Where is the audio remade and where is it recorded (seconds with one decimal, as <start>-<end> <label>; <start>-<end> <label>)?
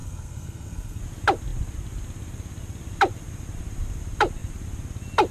0.0-1.0 remade; 1.0-5.3 recorded